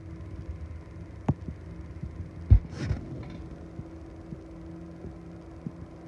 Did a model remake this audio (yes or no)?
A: no